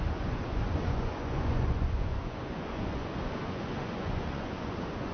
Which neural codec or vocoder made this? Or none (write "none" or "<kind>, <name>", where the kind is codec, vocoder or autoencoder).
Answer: vocoder, Vocos